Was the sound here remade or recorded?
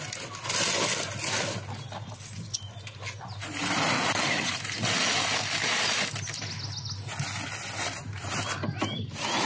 recorded